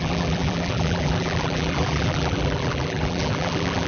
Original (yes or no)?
no